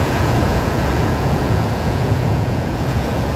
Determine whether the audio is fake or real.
fake